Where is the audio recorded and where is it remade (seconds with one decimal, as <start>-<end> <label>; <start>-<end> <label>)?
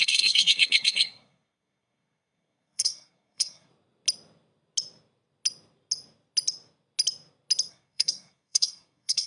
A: 0.0-3.7 remade; 3.7-7.7 recorded; 7.7-9.3 remade